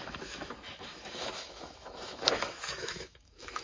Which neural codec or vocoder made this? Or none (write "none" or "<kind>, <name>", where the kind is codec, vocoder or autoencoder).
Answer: autoencoder, DAC-VAE